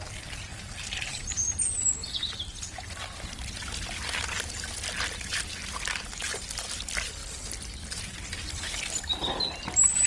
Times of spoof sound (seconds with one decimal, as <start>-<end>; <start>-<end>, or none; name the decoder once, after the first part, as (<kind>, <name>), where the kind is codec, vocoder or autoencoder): 0.5-1.5 (vocoder, BigVGAN v2); 2.0-3.0